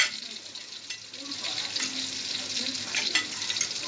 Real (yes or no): yes